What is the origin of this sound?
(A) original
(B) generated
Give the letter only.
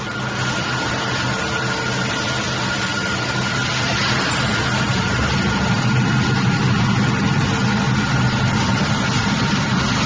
A